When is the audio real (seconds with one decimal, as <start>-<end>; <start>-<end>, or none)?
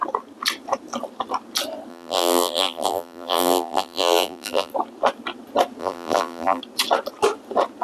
0.0-1.9; 4.7-5.8; 6.6-7.8